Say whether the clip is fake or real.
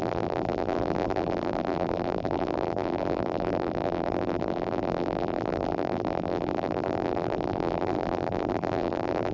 fake